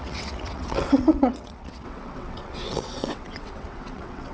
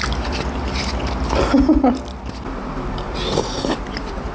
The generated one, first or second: first